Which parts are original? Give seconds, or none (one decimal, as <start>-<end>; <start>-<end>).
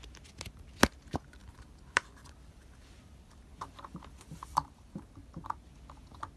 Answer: 0.0-1.4; 5.2-6.4